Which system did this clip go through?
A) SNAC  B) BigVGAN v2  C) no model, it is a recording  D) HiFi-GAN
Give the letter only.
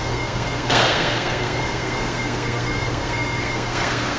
A